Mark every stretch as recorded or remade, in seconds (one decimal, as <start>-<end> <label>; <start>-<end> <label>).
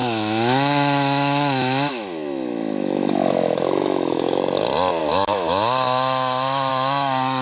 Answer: 0.0-4.4 remade; 4.4-5.0 recorded; 5.0-6.7 remade; 6.7-7.4 recorded